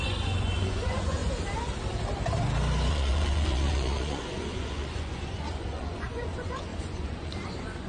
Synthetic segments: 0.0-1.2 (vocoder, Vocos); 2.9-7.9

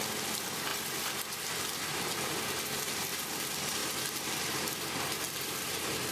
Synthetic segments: none

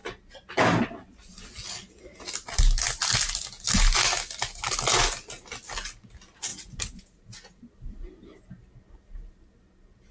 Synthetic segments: 6.5-7.6 (vocoder, Vocos)

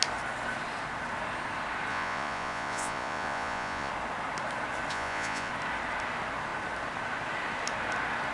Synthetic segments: 1.9-3.9 (vocoder, Vocos); 4.9-5.5

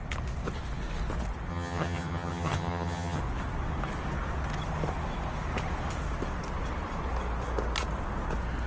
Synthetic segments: 1.5-3.2 (vocoder, HiFi-GAN)

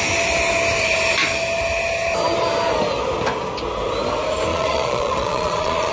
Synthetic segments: 4.5-5.9 (vocoder, Vocos)

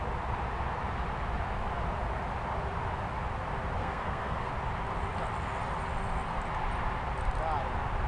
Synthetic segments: 3.8-4.5 (codec, SNAC)

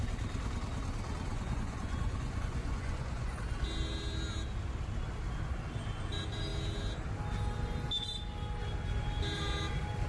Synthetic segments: 1.3-3.4 (vocoder, Vocos)